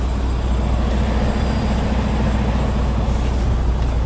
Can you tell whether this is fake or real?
real